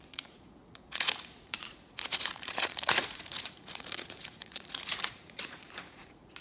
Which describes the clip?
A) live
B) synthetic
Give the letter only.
B